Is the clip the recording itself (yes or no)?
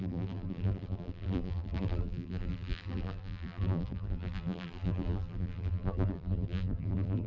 no